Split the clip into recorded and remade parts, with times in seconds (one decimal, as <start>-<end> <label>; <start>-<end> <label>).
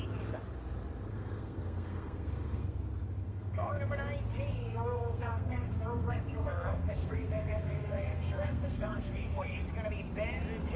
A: 0.0-1.1 recorded; 1.1-2.8 remade; 2.8-3.2 recorded; 3.2-3.8 remade; 3.8-4.5 recorded; 4.5-9.6 remade; 9.6-10.8 recorded